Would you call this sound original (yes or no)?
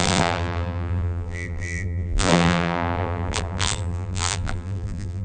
no